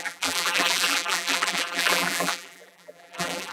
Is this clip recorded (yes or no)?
no